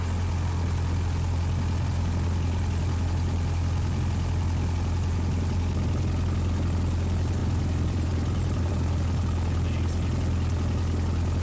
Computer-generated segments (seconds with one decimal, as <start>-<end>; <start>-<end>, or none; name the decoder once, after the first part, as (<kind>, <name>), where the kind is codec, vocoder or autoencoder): 7.4-8.7 (vocoder, BigVGAN v2)